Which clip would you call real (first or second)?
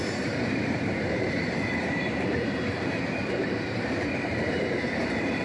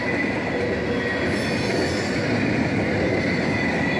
second